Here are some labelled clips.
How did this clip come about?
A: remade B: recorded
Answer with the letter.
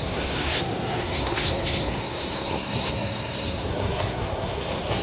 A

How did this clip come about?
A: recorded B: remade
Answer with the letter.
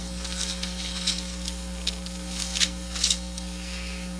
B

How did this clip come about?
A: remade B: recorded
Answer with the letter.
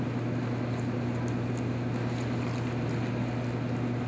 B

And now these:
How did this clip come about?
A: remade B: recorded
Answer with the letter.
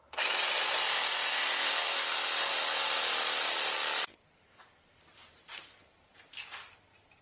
B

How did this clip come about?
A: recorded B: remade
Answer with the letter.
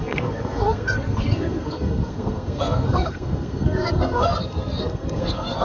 B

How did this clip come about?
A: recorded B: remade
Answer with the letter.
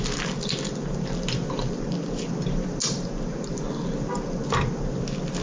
A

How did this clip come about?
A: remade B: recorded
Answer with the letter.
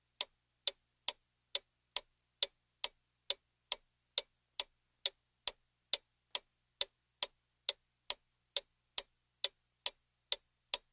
B